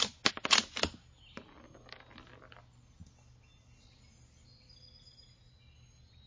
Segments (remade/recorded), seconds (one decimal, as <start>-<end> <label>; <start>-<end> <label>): 0.0-6.3 recorded